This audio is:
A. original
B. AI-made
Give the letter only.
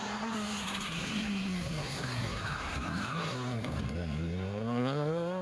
B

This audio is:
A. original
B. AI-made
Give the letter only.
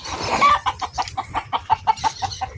A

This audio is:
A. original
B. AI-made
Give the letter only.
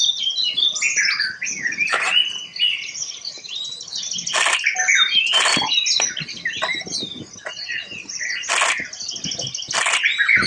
A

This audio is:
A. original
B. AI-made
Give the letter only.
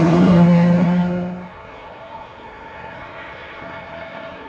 B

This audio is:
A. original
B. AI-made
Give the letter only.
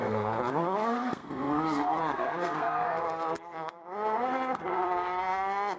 B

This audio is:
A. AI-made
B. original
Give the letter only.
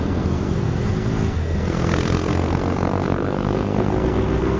A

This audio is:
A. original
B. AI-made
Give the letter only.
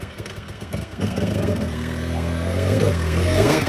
B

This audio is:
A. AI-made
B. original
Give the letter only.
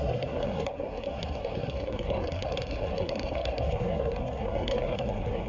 A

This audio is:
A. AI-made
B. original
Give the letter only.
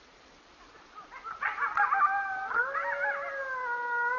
B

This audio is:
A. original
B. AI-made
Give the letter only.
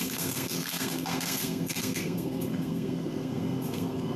B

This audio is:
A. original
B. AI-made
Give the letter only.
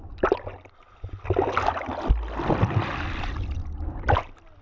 A